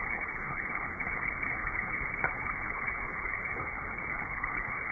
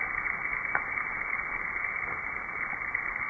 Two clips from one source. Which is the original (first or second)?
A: second